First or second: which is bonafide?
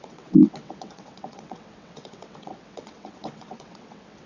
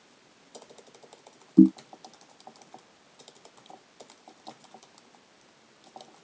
second